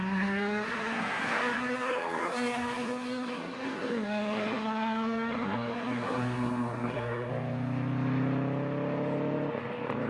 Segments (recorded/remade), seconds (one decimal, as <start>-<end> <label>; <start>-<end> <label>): 0.0-7.3 remade; 7.3-10.1 recorded